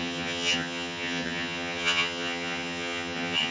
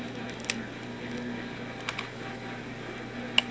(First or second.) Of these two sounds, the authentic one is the second